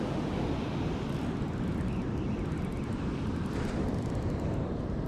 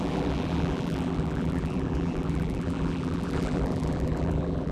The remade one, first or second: second